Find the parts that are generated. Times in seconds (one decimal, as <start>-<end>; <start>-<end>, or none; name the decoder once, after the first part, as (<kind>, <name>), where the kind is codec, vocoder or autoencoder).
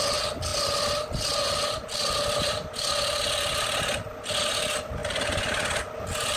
none